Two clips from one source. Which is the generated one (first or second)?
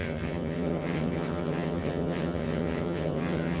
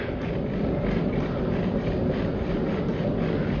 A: first